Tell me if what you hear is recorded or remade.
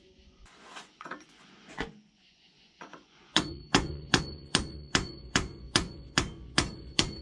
remade